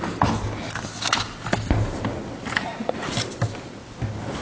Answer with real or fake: real